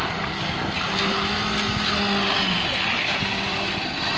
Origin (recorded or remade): recorded